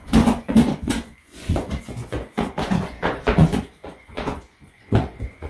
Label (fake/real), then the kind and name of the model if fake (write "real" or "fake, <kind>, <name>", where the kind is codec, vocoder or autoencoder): fake, vocoder, Vocos